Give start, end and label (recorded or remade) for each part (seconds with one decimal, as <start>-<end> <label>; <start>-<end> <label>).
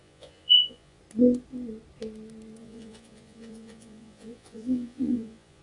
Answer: 0.0-1.0 remade; 1.0-2.6 recorded; 2.6-5.6 remade